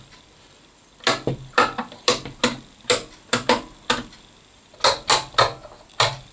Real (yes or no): yes